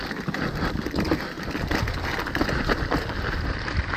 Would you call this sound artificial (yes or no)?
no